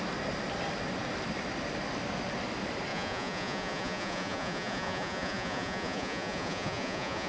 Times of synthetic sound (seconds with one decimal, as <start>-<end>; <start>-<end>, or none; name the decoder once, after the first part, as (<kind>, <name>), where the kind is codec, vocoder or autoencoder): 2.9-7.3 (vocoder, Vocos)